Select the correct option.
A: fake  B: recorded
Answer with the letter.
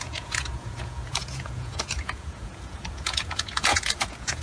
A